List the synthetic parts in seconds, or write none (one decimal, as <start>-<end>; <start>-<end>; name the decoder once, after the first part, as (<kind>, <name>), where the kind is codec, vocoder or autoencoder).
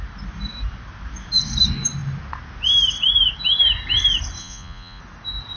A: 4.4-5.0 (vocoder, Vocos)